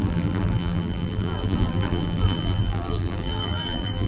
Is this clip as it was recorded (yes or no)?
no